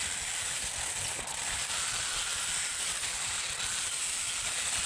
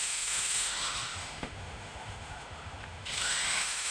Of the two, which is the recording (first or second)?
first